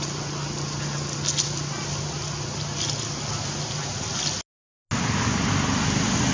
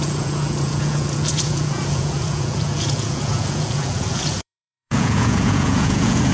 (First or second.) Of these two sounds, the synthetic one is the second